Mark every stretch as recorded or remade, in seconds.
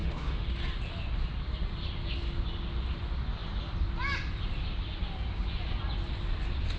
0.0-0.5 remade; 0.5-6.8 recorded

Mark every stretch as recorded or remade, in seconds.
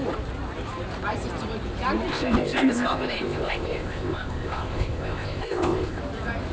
0.0-2.1 recorded; 2.1-6.0 remade; 6.0-6.5 recorded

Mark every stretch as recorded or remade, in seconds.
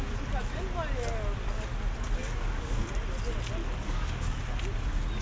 0.0-2.2 recorded; 2.2-2.9 remade; 2.9-3.6 recorded; 3.6-4.4 remade; 4.4-5.2 recorded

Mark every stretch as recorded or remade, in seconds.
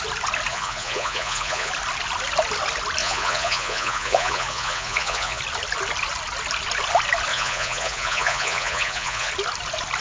0.0-0.5 recorded; 0.5-1.7 remade; 1.7-3.0 recorded; 3.0-5.4 remade; 5.4-7.3 recorded; 7.3-9.3 remade; 9.3-10.0 recorded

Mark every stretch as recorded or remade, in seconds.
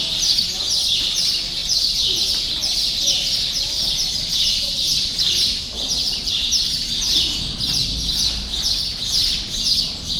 0.0-1.6 recorded; 1.6-2.2 remade; 2.2-2.6 recorded; 2.6-6.4 remade; 6.4-10.2 recorded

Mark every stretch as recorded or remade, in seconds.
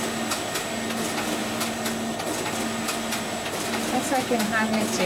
0.0-5.1 recorded